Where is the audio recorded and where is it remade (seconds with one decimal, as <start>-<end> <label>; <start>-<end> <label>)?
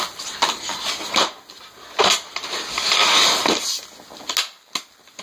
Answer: 0.0-5.2 recorded